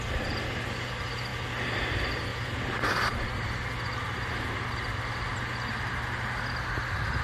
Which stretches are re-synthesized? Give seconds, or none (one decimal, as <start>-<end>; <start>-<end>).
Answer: none